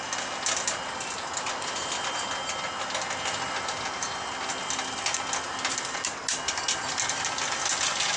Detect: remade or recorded recorded